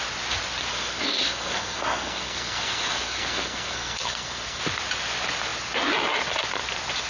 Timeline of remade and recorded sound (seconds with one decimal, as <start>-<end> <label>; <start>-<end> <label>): 0.0-0.7 recorded; 0.7-4.6 remade; 4.6-7.1 recorded